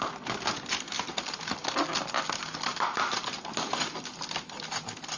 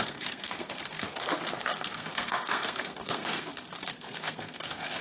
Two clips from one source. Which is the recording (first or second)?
first